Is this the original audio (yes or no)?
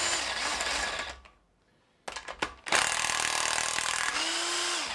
yes